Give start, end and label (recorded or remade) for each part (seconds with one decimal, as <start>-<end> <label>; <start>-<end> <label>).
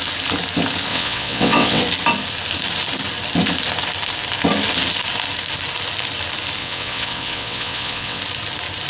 0.0-0.9 recorded; 0.9-1.8 remade; 1.8-6.6 recorded; 6.6-8.2 remade; 8.2-8.9 recorded